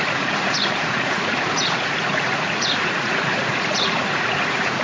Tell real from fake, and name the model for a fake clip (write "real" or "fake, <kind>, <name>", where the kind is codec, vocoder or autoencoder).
fake, vocoder, Vocos